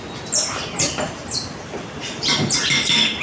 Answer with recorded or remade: recorded